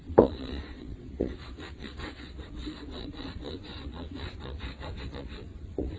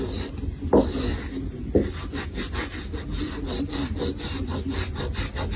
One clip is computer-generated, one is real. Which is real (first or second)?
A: second